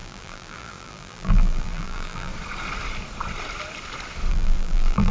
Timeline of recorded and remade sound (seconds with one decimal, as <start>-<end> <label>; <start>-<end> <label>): 0.0-2.3 remade; 2.3-4.3 recorded; 4.3-5.1 remade